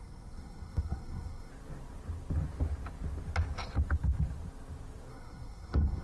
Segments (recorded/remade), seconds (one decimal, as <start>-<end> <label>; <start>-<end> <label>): 0.0-1.5 remade; 1.5-5.1 recorded; 5.1-6.0 remade